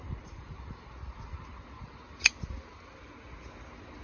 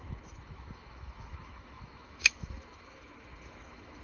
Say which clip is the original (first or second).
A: first